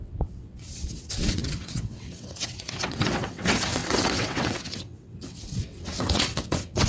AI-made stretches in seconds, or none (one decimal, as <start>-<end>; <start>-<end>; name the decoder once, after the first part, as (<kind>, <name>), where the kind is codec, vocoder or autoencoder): 0.0-6.9 (vocoder, WaveNeXt)